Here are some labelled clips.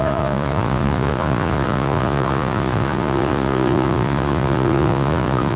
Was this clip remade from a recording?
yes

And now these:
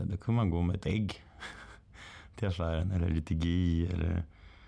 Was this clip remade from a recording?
no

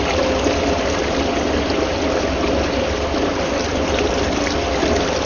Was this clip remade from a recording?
no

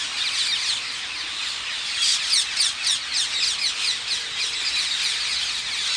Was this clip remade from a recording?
no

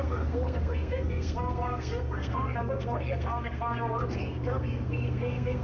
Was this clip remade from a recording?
yes